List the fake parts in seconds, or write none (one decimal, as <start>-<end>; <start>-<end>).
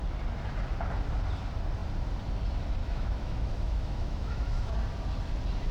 2.8-4.7